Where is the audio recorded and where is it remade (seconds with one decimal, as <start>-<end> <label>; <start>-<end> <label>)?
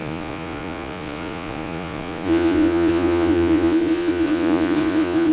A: 0.0-5.3 remade